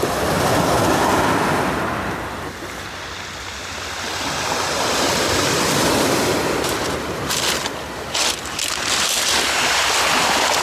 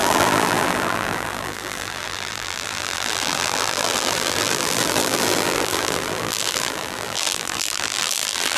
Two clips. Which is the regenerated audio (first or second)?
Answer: second